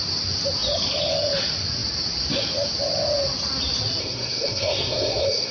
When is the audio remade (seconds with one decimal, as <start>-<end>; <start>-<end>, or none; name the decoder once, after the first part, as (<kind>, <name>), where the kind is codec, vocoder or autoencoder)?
4.0-5.5 (codec, SNAC)